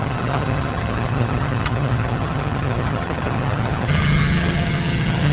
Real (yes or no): no